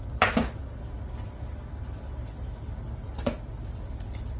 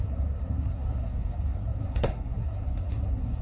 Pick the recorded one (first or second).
first